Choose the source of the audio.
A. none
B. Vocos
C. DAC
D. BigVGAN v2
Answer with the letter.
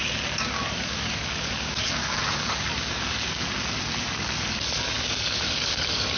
C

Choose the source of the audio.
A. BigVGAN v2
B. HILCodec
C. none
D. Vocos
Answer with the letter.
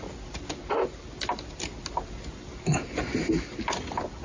C